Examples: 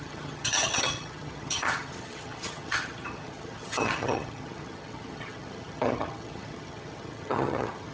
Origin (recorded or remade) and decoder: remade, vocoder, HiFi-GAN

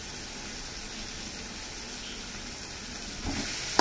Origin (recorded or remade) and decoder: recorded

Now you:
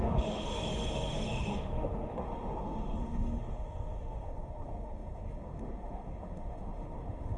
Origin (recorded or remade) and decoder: remade, autoencoder, DAC-VAE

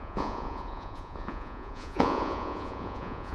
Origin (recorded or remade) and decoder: remade, vocoder, Vocos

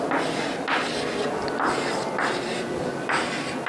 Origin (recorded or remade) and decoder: recorded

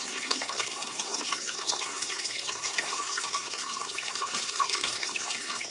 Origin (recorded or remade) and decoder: remade, codec, SNAC